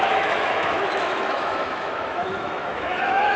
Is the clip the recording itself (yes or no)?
no